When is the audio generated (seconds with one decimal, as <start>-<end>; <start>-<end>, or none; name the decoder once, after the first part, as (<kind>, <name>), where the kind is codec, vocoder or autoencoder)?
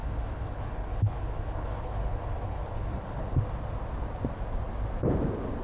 0.0-3.3 (codec, HILCodec)